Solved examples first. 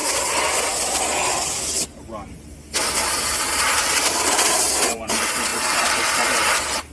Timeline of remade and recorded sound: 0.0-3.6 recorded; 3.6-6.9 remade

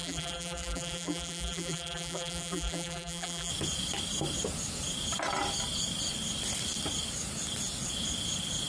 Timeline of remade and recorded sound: 0.0-3.5 remade; 3.5-8.7 recorded

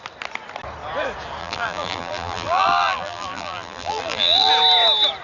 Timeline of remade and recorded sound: 0.0-1.4 recorded; 1.4-4.5 remade; 4.5-5.2 recorded

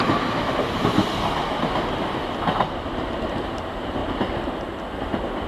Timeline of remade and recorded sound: 0.0-5.5 recorded

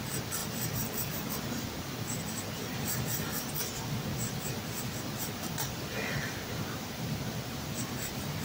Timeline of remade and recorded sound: 0.0-3.3 remade; 3.3-3.9 recorded; 3.9-8.4 remade